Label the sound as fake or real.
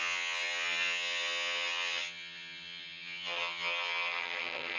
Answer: fake